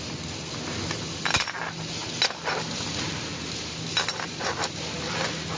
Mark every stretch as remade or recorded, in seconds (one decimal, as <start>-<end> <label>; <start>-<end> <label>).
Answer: 0.0-5.6 recorded